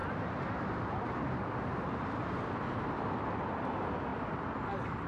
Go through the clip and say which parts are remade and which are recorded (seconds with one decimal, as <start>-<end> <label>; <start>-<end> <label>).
0.0-3.1 remade; 3.1-5.1 recorded